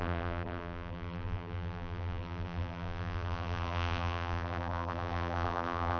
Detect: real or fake fake